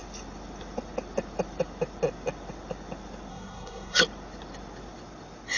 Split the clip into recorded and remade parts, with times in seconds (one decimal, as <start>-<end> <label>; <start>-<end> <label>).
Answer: 0.0-3.3 recorded; 3.3-4.0 remade; 4.0-5.6 recorded